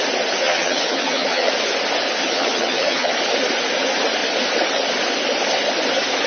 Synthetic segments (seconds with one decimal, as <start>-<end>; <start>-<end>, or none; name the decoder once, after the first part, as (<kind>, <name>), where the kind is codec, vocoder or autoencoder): 0.4-1.5 (vocoder, HiFi-GAN); 2.2-3.1